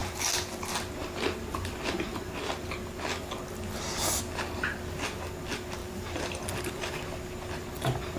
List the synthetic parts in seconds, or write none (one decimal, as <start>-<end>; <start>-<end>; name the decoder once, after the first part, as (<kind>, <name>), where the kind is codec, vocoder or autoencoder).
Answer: 5.8-6.4 (vocoder, BigVGAN v2)